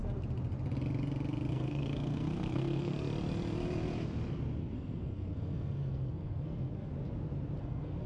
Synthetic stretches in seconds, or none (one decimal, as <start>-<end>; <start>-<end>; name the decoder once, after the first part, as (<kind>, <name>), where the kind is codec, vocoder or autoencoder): 1.5-2.9 (codec, SNAC); 4.6-6.9; 7.6-8.1